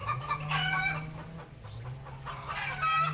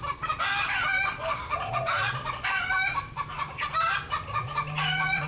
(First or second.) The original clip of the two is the first